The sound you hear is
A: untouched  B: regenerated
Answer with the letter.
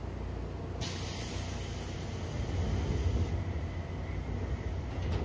A